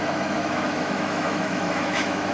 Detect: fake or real fake